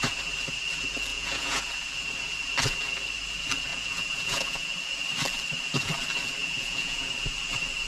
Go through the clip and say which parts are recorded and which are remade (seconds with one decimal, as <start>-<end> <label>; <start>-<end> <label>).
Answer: 0.0-1.1 recorded; 1.1-1.6 remade; 1.6-3.7 recorded; 3.7-4.7 remade; 4.7-6.4 recorded; 6.4-7.1 remade; 7.1-7.9 recorded